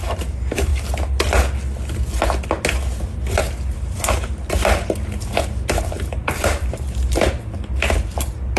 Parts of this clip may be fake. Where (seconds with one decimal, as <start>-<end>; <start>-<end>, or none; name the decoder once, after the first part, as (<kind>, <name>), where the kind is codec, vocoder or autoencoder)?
0.0-0.7 (vocoder, BigVGAN v2); 3.4-8.6